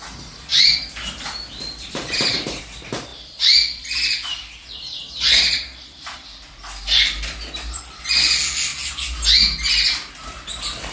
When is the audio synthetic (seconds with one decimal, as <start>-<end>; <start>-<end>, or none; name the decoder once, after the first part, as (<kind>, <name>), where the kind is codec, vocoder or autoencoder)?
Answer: 0.5-2.6 (vocoder, BigVGAN v2); 3.1-8.0